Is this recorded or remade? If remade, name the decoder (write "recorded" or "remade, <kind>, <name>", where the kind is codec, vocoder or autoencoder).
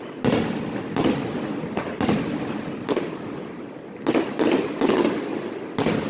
recorded